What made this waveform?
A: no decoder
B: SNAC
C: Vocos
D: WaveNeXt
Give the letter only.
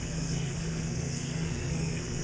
B